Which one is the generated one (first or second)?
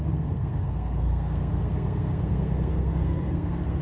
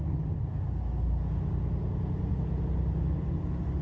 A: first